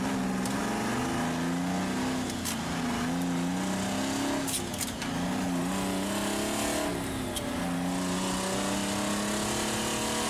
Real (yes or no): yes